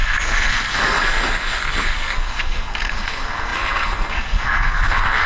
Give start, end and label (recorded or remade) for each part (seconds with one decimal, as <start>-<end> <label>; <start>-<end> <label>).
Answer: 0.0-5.3 remade